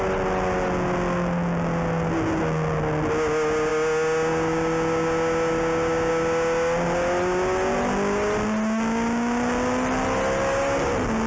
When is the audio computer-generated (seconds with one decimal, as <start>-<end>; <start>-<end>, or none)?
none